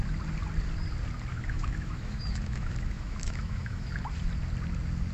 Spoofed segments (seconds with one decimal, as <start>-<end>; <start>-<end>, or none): 1.3-4.0